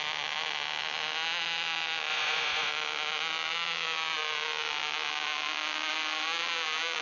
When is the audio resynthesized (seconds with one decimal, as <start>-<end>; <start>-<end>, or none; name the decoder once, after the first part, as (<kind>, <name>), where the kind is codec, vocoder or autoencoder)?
2.1-2.7 (vocoder, Vocos)